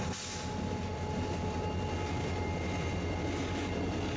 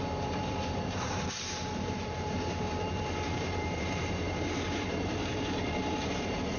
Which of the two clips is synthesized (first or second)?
second